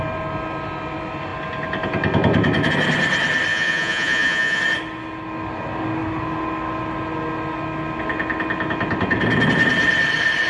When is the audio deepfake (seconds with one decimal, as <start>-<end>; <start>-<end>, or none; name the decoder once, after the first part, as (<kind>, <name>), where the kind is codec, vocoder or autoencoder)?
3.5-4.6 (vocoder, Vocos)